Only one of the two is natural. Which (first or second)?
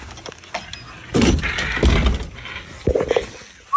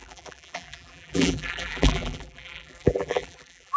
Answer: first